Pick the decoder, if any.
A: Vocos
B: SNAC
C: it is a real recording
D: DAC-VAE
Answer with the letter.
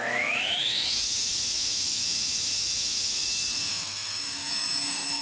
D